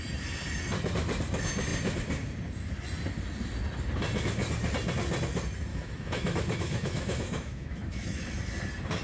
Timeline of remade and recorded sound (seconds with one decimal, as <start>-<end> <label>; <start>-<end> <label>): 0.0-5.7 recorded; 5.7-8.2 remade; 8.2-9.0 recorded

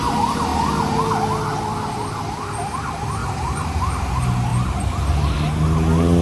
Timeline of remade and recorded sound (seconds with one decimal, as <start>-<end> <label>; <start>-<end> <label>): 0.0-3.2 recorded; 3.2-4.1 remade; 4.1-4.5 recorded; 4.5-5.2 remade; 5.2-6.2 recorded

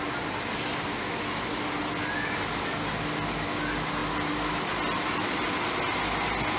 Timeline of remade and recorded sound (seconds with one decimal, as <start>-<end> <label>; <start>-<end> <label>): 0.0-6.6 recorded